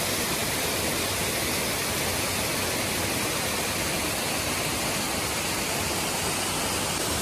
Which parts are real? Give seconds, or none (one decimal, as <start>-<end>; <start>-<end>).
0.0-7.2